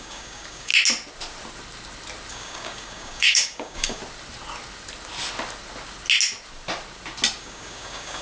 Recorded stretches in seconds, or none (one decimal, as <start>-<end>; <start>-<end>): 0.7-2.3; 4.0-7.4